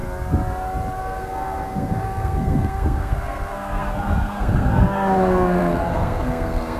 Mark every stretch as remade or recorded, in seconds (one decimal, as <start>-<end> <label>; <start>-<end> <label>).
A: 0.0-1.0 recorded; 1.0-6.8 remade